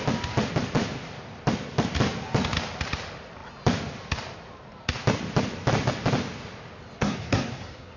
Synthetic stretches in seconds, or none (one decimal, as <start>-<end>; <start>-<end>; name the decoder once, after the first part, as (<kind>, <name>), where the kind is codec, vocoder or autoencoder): 7.0-8.0 (codec, SNAC)